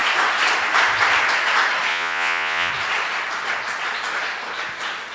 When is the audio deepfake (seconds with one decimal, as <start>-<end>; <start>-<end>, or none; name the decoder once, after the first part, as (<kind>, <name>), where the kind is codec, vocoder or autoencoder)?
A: 1.9-2.7 (vocoder, Vocos)